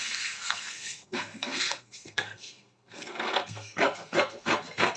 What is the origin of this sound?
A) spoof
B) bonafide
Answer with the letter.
A